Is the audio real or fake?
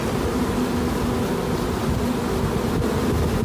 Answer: real